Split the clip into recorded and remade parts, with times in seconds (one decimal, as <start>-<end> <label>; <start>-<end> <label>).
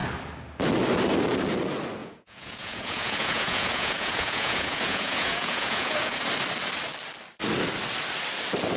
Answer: 0.0-2.0 recorded; 2.0-6.3 remade; 6.3-8.8 recorded